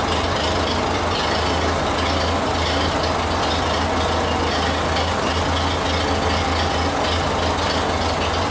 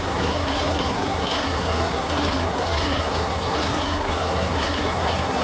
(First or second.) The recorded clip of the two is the first